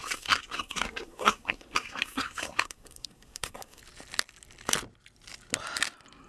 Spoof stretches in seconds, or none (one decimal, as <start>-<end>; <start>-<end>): 0.0-3.8